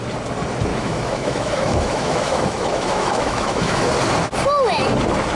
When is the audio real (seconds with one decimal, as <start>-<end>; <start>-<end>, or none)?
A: 0.0-0.7; 3.9-5.4